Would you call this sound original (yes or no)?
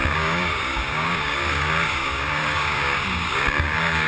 no